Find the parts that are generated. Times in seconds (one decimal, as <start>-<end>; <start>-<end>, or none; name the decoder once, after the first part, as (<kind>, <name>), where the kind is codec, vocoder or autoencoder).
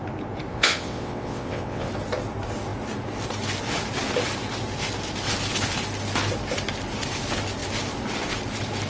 0.5-1.9 (vocoder, WaveNeXt)